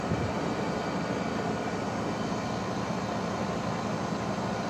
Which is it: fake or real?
real